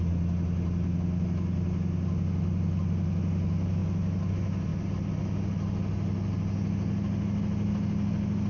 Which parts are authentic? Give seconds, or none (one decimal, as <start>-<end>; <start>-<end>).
0.0-8.5